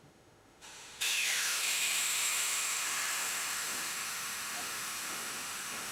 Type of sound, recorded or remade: remade